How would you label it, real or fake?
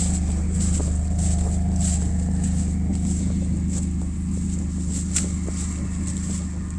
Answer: real